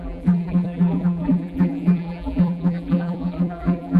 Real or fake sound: fake